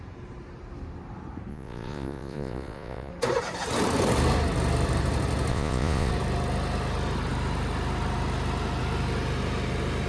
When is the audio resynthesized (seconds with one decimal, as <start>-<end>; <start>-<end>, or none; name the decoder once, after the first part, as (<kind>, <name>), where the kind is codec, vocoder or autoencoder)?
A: 1.5-3.1 (vocoder, Vocos); 5.5-6.1